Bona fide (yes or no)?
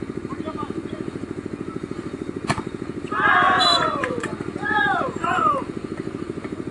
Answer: no